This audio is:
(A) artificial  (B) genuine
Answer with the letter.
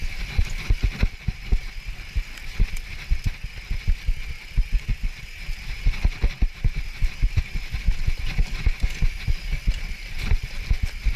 B